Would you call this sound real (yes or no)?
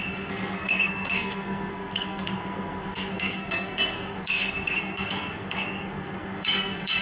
no